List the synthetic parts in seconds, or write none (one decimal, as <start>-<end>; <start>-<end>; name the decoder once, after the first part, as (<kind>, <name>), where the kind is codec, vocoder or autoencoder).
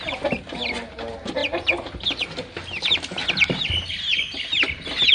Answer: none